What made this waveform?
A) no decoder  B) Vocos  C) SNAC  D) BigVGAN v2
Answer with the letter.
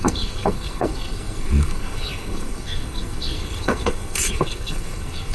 C